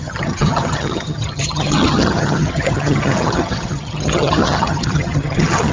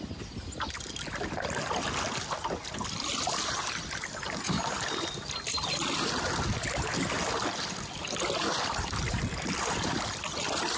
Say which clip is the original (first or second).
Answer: second